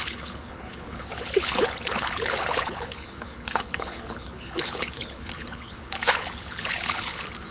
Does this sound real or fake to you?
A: fake